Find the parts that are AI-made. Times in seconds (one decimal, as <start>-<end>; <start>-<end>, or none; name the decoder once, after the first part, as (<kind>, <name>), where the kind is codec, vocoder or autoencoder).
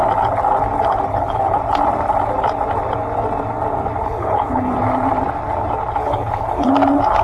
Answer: 1.1-1.6 (codec, HILCodec); 4.0-4.7; 6.0-6.7